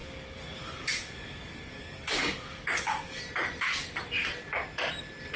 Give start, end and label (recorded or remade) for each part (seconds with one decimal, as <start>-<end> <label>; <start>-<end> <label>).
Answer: 0.0-3.2 remade; 3.2-5.4 recorded